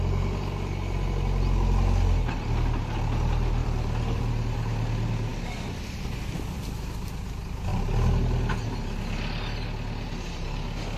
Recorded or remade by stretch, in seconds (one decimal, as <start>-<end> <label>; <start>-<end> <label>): 0.0-3.6 recorded; 3.6-4.2 remade; 4.2-5.3 recorded; 5.3-6.6 remade; 6.6-11.0 recorded